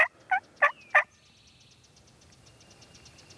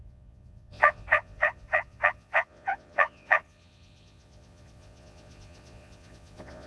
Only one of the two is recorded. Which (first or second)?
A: first